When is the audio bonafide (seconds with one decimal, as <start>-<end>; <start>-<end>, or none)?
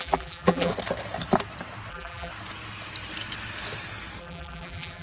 0.7-1.9; 2.3-4.2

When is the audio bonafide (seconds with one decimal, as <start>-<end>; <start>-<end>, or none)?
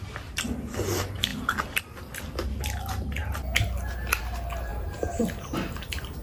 0.0-4.7; 5.2-6.2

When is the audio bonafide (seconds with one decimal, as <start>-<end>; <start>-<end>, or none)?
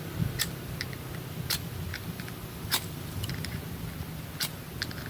0.0-1.9; 3.3-5.1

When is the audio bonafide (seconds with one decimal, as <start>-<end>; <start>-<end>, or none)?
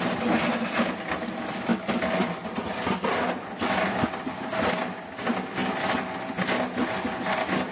0.0-7.7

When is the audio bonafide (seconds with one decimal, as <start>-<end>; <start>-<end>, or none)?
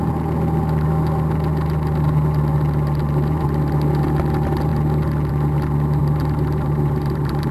0.0-6.0